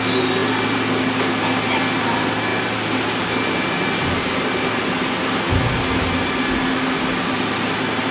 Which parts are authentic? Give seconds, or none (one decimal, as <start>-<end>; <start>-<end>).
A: 0.0-8.1

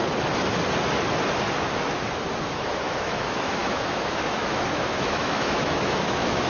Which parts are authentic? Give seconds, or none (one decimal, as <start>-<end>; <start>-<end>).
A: 0.0-2.3

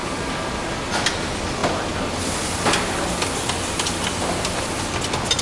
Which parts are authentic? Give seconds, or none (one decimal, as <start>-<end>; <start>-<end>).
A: 0.0-5.4

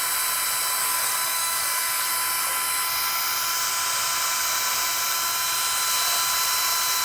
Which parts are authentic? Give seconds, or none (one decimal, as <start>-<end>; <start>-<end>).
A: 0.0-0.8; 2.1-7.0

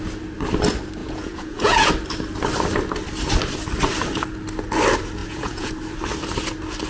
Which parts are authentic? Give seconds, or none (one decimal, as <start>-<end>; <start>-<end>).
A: 0.0-1.0; 1.9-5.2; 5.7-6.9

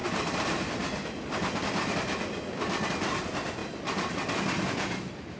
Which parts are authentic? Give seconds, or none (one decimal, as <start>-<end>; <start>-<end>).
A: 0.0-3.6

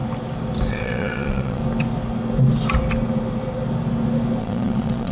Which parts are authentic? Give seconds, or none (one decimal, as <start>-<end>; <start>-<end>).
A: 0.0-0.7; 1.6-4.4

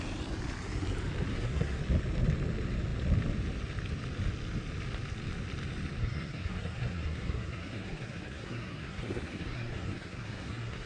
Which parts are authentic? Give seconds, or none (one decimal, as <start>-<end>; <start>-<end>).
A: 0.0-1.3; 1.8-6.0